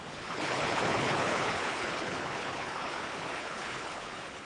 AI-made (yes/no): yes